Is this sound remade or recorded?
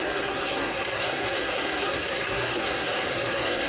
remade